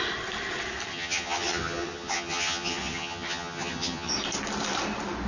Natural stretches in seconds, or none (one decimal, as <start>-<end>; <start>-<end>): 0.0-0.9; 4.1-5.3